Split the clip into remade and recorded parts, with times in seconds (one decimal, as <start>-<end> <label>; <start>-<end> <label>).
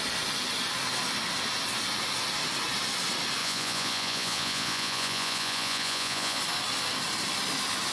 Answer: 0.0-3.4 recorded; 3.4-6.4 remade; 6.4-7.9 recorded